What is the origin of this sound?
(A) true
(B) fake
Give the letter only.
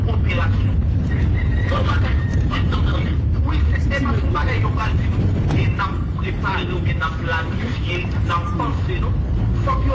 B